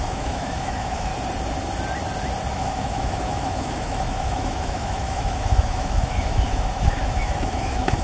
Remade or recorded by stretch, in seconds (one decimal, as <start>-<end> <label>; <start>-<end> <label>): 0.0-1.1 remade; 1.1-2.5 recorded; 2.5-8.0 remade